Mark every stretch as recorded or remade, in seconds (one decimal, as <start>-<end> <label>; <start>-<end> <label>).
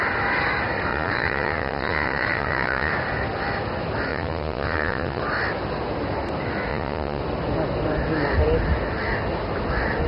0.0-0.9 recorded; 0.9-2.9 remade; 2.9-4.1 recorded; 4.1-5.2 remade; 5.2-6.7 recorded; 6.7-7.2 remade; 7.2-10.1 recorded